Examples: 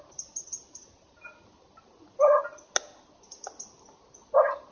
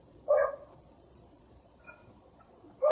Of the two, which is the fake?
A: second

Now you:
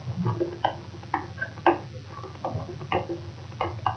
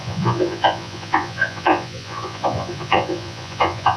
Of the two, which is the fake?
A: second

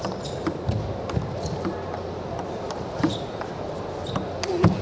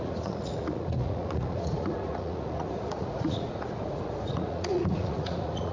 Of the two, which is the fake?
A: second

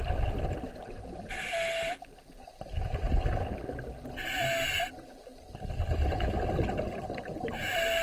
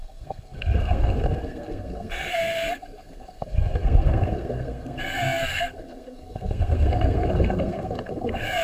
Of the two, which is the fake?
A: second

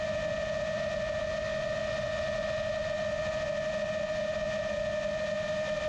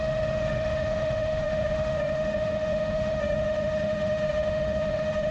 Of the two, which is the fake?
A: second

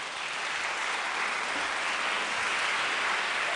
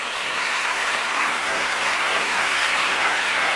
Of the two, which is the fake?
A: second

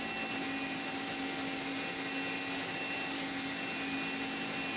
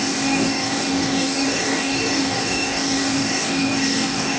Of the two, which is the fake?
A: second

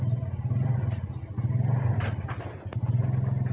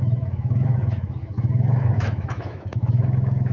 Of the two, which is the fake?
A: second